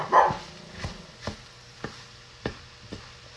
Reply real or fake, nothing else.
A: real